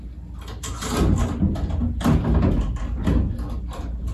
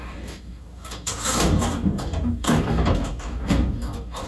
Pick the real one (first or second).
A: first